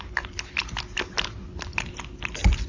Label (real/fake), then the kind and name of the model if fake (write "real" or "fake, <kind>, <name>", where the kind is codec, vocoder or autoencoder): real